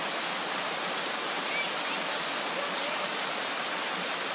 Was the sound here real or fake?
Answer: real